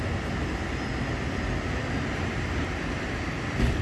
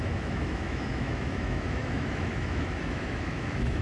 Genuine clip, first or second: first